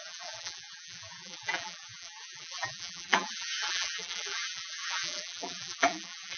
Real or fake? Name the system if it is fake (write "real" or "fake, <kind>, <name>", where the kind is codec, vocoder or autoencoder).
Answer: fake, vocoder, BigVGAN v2